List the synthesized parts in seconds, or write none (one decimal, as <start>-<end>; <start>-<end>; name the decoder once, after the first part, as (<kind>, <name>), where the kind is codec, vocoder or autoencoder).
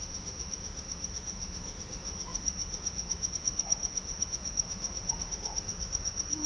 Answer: 0.0-6.5 (autoencoder, DAC-VAE)